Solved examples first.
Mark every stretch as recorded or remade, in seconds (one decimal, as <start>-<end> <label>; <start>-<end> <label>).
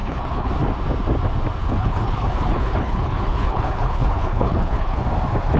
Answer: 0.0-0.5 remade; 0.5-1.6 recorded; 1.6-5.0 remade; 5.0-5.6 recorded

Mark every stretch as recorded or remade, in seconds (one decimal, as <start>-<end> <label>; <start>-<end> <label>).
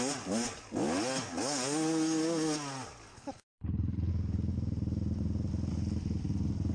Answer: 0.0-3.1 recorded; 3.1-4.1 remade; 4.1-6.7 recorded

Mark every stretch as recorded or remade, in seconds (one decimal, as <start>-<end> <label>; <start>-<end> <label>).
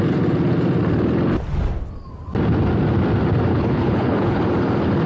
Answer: 0.0-3.5 recorded; 3.5-4.4 remade; 4.4-5.1 recorded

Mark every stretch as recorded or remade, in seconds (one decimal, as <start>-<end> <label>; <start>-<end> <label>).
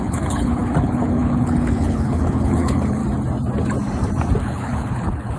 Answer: 0.0-3.0 remade; 3.0-4.4 recorded; 4.4-5.4 remade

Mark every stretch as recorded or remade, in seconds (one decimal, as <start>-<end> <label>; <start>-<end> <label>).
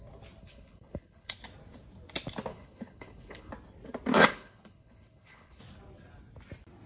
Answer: 0.0-0.4 recorded; 0.4-1.4 remade; 1.4-2.5 recorded; 2.5-3.5 remade; 3.5-4.3 recorded; 4.3-5.6 remade; 5.6-6.9 recorded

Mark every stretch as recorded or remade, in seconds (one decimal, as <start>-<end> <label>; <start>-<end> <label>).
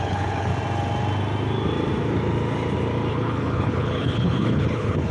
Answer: 0.0-0.5 remade; 0.5-3.1 recorded; 3.1-5.1 remade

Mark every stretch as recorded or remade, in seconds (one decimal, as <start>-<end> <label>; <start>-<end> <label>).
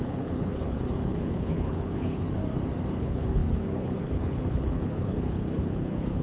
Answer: 0.0-2.4 remade; 2.4-3.0 recorded; 3.0-6.2 remade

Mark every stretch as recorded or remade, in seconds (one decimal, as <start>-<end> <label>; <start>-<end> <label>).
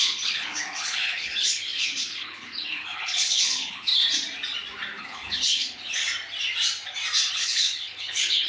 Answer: 0.0-3.9 remade; 3.9-5.0 recorded; 5.0-6.0 remade; 6.0-7.3 recorded; 7.3-8.5 remade